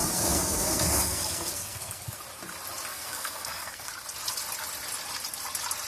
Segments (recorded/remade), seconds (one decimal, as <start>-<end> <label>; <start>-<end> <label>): 0.0-2.2 remade; 2.2-2.9 recorded; 2.9-3.9 remade; 3.9-5.9 recorded